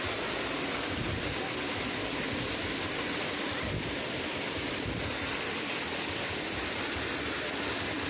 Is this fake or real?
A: real